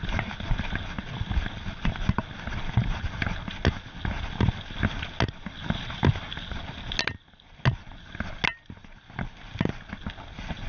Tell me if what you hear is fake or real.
real